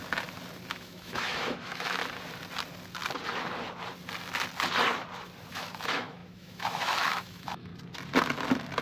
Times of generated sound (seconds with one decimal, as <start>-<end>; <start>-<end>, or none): 0.7-2.0; 5.5-7.7